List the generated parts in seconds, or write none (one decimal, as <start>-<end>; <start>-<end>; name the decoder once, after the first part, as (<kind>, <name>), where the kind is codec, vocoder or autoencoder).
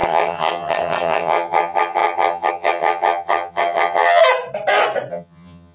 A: 0.0-4.2 (vocoder, HiFi-GAN); 5.1-5.7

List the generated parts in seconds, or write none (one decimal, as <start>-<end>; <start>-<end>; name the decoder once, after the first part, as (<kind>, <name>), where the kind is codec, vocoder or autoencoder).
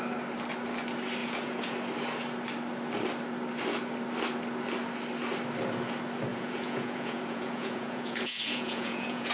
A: 1.2-1.7 (vocoder, Vocos); 6.3-9.3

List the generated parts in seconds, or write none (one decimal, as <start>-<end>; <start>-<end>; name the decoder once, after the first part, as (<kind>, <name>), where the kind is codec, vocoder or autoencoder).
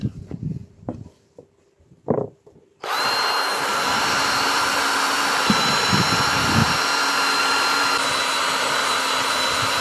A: 0.0-9.8 (vocoder, BigVGAN v2)